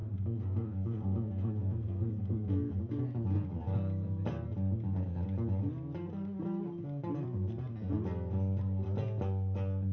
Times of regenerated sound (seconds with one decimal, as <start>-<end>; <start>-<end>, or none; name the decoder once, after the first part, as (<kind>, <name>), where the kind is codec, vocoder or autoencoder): 0.0-2.8 (codec, SNAC)